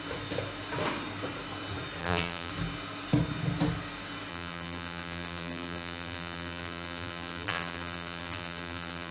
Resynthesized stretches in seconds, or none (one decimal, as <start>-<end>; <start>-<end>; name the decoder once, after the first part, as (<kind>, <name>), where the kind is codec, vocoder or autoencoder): 2.0-2.5 (vocoder, BigVGAN v2); 4.3-9.1